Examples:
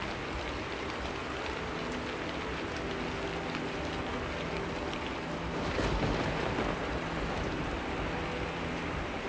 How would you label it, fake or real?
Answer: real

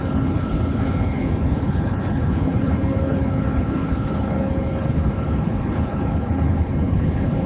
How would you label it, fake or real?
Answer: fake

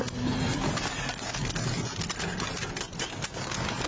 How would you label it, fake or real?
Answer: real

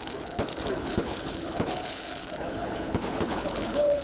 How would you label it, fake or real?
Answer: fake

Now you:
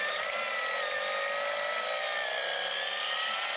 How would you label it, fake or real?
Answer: real